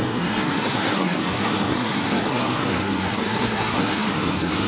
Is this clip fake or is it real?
fake